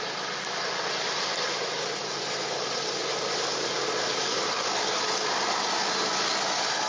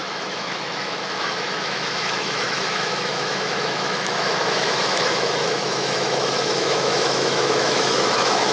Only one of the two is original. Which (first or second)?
first